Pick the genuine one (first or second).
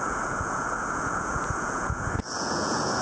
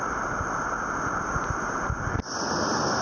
second